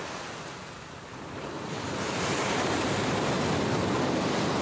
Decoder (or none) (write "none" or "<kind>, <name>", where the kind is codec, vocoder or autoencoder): none